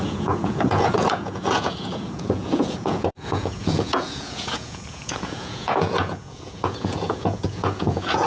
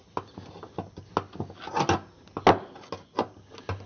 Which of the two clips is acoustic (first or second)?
second